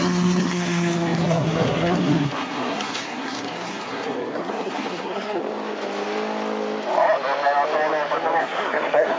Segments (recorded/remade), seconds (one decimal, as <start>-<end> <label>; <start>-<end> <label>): 0.0-5.4 remade; 5.4-8.4 recorded; 8.4-9.2 remade